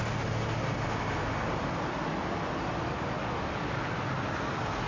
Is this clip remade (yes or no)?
no